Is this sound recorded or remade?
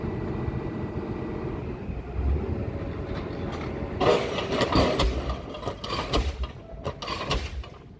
recorded